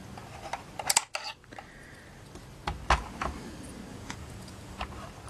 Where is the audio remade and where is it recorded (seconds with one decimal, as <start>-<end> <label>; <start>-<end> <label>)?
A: 0.0-3.9 recorded; 3.9-4.8 remade; 4.8-5.3 recorded